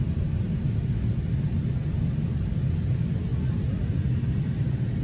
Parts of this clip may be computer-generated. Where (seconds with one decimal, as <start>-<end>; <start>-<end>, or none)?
none